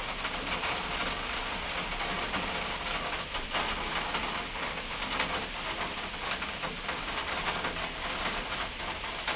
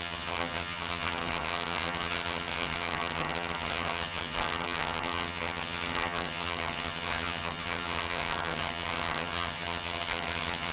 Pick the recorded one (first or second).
first